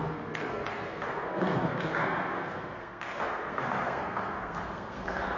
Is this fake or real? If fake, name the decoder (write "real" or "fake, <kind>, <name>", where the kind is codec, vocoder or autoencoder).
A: fake, codec, SNAC